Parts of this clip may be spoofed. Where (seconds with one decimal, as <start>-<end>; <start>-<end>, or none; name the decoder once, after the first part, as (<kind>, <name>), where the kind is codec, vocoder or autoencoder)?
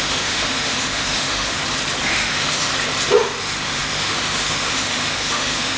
0.0-1.6 (autoencoder, DAC-VAE); 2.1-2.7; 3.4-5.8